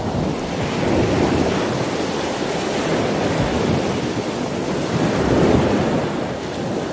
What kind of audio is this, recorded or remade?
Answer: recorded